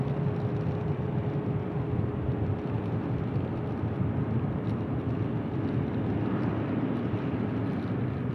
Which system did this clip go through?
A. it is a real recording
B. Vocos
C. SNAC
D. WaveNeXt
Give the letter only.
A